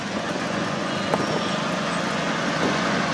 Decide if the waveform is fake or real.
fake